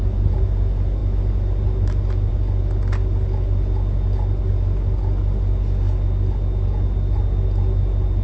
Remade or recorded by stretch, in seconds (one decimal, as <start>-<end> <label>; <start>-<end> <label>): 0.0-8.2 recorded